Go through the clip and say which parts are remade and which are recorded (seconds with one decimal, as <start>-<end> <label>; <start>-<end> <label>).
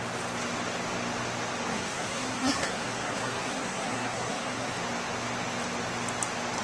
0.0-1.7 recorded; 1.7-4.7 remade; 4.7-6.6 recorded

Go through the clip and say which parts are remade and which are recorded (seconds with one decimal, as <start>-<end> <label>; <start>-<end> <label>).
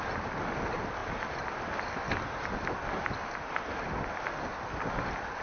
0.0-5.4 recorded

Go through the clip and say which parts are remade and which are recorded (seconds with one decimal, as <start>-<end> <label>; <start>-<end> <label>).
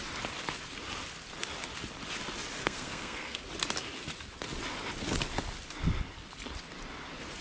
0.0-2.6 recorded; 2.6-3.4 remade; 3.4-7.4 recorded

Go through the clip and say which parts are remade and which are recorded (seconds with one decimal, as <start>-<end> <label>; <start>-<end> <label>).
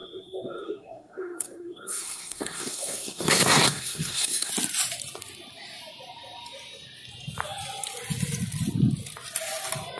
0.0-4.5 remade; 4.5-10.0 recorded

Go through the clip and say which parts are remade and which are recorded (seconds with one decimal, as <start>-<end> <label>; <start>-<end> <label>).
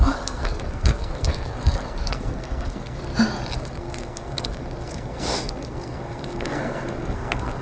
0.0-3.1 remade; 3.1-3.6 recorded; 3.6-7.6 remade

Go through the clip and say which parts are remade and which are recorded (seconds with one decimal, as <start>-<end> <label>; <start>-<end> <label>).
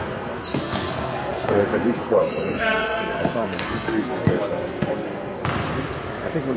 0.0-5.4 remade; 5.4-6.6 recorded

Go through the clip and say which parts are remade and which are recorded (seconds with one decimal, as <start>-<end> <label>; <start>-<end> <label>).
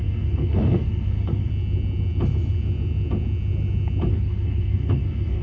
0.0-1.5 remade; 1.5-4.1 recorded; 4.1-5.4 remade